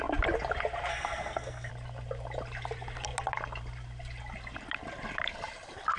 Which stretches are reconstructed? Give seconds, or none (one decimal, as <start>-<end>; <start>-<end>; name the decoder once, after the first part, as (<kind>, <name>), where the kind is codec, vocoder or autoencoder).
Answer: 0.9-1.7 (codec, SNAC)